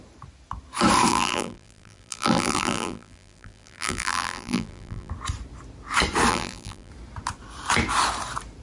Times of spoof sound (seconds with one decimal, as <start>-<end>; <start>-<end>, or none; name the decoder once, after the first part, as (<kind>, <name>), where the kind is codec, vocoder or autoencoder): 1.1-5.1 (vocoder, BigVGAN v2); 6.3-6.9